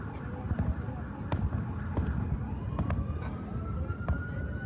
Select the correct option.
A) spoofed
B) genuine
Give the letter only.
B